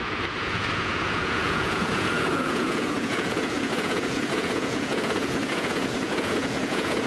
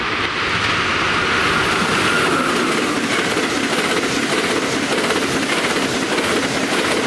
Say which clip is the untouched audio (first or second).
second